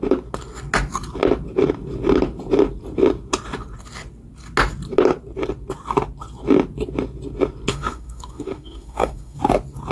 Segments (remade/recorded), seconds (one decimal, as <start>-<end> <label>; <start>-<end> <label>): 0.0-7.7 recorded; 7.7-9.4 remade; 9.4-9.9 recorded